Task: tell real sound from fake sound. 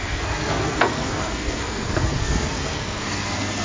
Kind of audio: fake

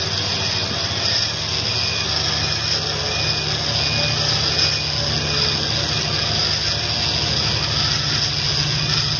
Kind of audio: real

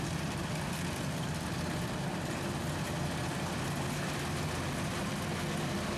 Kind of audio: real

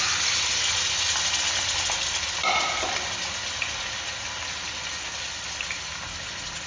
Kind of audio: real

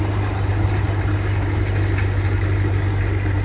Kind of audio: real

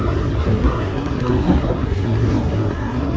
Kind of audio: fake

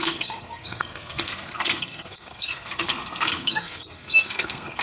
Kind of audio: fake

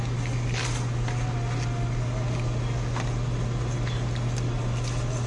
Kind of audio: real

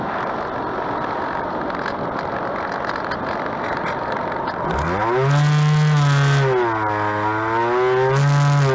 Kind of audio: real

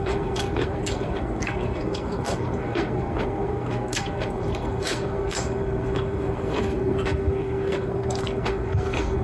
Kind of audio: fake